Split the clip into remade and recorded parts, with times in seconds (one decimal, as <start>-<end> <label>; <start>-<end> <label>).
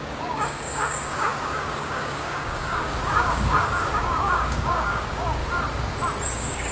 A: 0.0-5.4 remade; 5.4-6.3 recorded; 6.3-6.7 remade